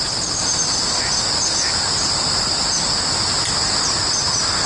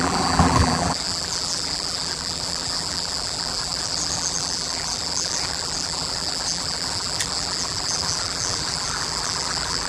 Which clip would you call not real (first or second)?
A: second